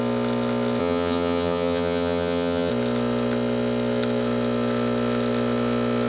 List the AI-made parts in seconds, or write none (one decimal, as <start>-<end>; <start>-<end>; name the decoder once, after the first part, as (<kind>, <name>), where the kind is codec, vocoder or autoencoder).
0.8-2.7 (vocoder, HiFi-GAN)